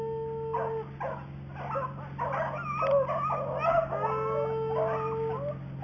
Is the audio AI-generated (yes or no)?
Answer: no